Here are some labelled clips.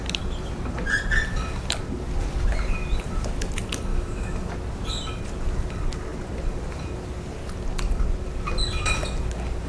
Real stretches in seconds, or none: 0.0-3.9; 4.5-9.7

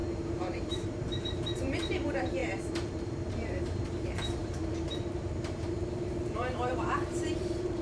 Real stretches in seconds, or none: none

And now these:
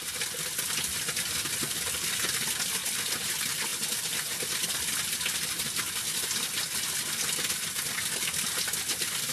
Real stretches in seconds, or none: 0.0-9.3

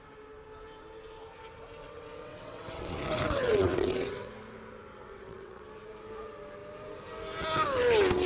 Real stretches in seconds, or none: 0.0-1.8; 4.3-4.9; 5.6-8.3